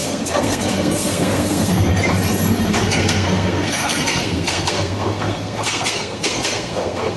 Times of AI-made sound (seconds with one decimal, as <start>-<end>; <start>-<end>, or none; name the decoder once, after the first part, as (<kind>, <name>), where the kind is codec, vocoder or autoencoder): 0.0-1.9 (codec, SNAC); 2.7-7.2